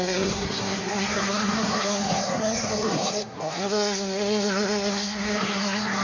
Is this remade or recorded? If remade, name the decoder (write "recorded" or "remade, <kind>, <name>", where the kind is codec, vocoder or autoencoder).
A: remade, codec, SNAC